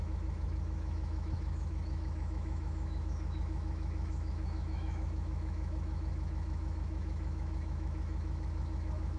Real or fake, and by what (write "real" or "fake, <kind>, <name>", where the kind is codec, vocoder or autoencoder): fake, autoencoder, DAC-VAE